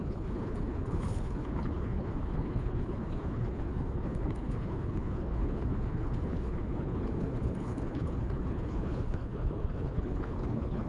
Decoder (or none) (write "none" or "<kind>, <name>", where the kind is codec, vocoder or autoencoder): codec, HILCodec